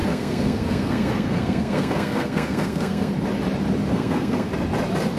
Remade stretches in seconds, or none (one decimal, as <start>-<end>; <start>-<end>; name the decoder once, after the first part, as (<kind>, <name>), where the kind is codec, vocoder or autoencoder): 0.0-3.1 (codec, SNAC); 3.9-4.5